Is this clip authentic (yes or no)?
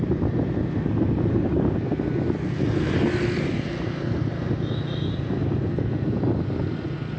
yes